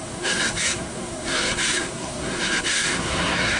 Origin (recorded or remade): remade